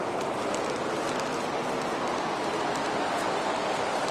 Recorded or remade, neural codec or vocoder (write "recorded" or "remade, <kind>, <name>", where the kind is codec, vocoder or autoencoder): recorded